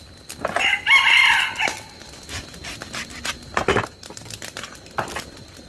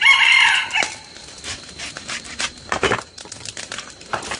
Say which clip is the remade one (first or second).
second